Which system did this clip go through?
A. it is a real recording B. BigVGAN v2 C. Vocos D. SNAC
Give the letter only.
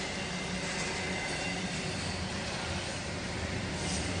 A